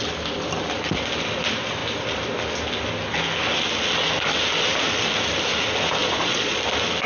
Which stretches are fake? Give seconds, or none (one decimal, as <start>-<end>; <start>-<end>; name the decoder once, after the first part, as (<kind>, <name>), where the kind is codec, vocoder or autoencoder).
6.0-6.6 (vocoder, Vocos)